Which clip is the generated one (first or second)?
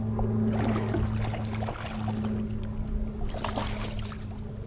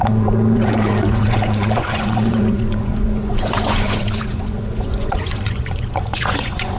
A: second